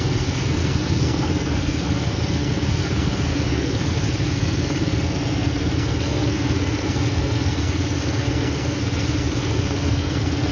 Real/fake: fake